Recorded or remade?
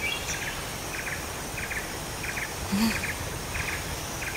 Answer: recorded